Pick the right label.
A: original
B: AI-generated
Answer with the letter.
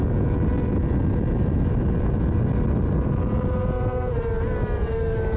A